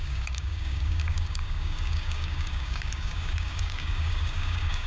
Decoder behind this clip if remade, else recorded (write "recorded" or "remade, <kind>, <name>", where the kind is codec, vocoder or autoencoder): remade, codec, DAC